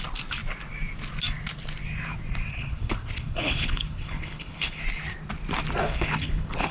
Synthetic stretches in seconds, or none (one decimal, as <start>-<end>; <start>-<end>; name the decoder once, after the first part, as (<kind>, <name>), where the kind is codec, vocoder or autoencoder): 2.5-4.8 (codec, HILCodec); 5.8-6.7